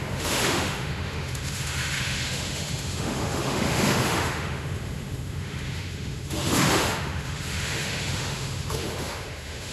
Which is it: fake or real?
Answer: fake